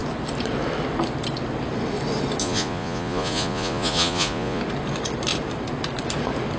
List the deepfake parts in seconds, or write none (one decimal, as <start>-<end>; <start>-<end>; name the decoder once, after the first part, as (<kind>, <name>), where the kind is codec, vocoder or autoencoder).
2.4-4.6 (vocoder, Vocos)